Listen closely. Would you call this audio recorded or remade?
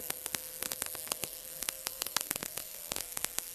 remade